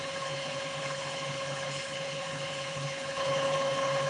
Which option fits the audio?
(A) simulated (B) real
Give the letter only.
A